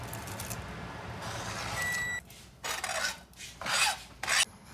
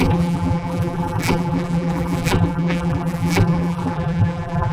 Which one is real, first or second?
first